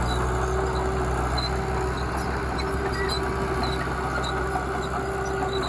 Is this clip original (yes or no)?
yes